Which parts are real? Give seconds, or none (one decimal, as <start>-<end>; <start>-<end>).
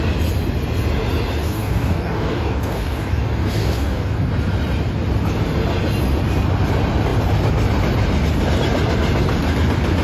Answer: 0.0-1.4; 4.3-10.0